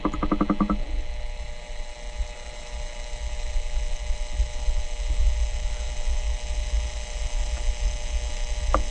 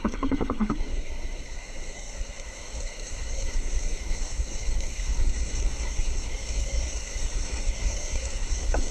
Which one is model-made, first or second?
second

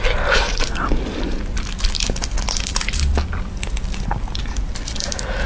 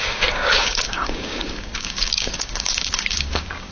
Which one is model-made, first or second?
second